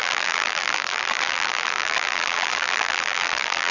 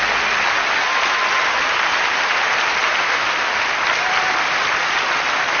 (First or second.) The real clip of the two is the second